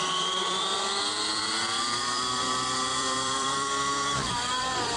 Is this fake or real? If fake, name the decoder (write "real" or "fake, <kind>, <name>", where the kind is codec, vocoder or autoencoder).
fake, vocoder, BigVGAN v2